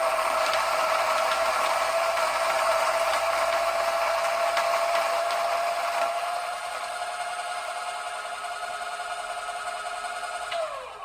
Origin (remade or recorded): recorded